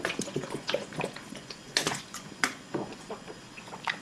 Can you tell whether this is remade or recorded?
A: remade